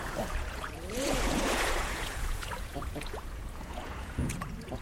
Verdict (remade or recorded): remade